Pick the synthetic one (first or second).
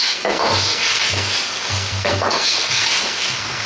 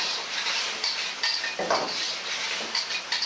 first